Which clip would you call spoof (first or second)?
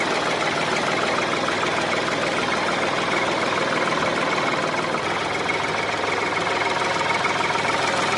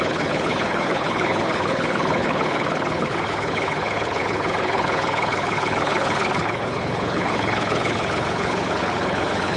second